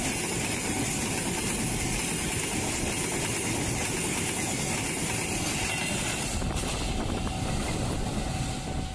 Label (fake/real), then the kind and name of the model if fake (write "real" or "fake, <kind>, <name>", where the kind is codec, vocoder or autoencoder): real